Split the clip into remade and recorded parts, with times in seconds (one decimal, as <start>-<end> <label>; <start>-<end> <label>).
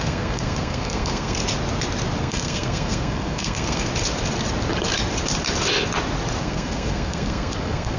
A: 0.0-1.4 remade; 1.4-2.2 recorded; 2.2-3.9 remade; 3.9-6.4 recorded; 6.4-8.0 remade